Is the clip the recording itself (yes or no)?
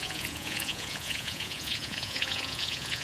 no